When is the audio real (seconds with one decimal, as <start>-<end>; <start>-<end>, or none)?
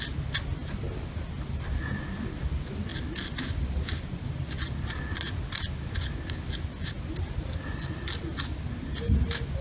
0.0-9.6